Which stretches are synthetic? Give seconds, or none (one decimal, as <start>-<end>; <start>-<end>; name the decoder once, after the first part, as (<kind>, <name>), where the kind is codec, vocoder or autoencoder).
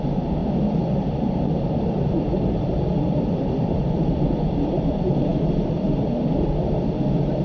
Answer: 0.4-4.8 (vocoder, BigVGAN v2); 5.3-6.9